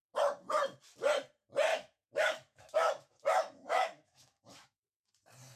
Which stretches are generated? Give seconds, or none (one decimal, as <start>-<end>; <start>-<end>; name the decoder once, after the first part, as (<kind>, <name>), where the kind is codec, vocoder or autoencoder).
1.7-5.1 (autoencoder, DAC-VAE)

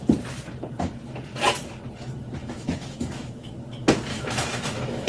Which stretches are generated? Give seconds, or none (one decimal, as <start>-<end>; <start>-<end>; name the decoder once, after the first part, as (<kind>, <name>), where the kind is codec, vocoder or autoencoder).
2.4-3.5 (autoencoder, DAC-VAE); 4.1-5.1